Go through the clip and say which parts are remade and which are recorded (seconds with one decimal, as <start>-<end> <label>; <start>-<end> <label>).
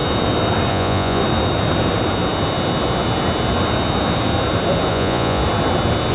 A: 0.0-0.7 recorded; 0.7-1.2 remade; 1.2-4.9 recorded; 4.9-5.4 remade; 5.4-6.1 recorded